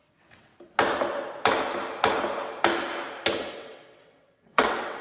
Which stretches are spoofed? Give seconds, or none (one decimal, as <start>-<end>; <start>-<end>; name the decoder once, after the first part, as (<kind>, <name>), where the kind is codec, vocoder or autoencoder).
0.0-0.5 (vocoder, WaveNeXt); 3.5-5.0

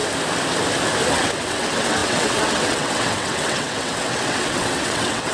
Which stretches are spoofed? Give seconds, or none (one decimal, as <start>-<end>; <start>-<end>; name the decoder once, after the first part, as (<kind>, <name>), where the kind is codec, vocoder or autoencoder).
1.1-5.3 (vocoder, WaveNeXt)

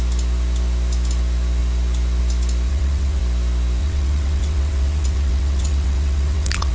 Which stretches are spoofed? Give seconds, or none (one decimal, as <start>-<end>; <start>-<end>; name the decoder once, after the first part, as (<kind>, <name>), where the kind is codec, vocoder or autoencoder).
2.7-3.2 (vocoder, WaveNeXt); 3.8-6.7